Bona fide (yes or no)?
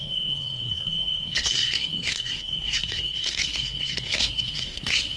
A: no